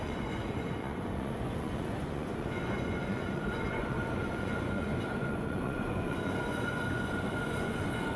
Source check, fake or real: fake